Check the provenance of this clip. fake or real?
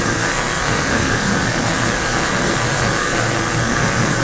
fake